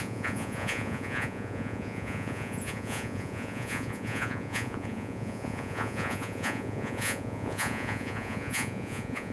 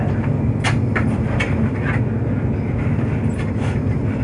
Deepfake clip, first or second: first